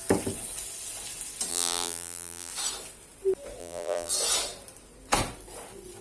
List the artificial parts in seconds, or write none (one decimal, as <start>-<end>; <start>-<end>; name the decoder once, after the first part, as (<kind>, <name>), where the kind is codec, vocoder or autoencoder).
1.5-2.5 (vocoder, BigVGAN v2); 3.6-4.1